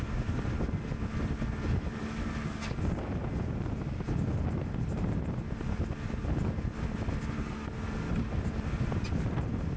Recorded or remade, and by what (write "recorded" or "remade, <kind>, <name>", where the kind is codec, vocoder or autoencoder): recorded